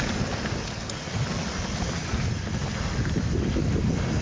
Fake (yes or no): no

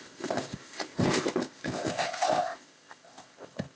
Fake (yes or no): yes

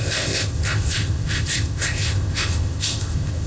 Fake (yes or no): yes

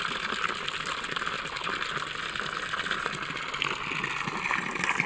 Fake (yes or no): no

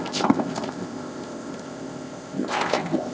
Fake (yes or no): yes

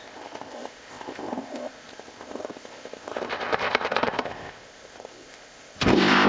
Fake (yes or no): yes